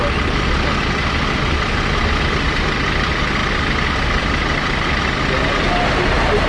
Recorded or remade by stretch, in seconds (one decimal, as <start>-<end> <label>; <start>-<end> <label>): 0.0-6.5 recorded